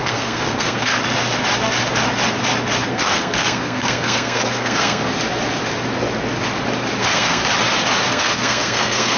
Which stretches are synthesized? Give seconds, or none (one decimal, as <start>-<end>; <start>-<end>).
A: 0.0-0.9; 2.9-5.0; 7.0-7.4; 8.1-9.2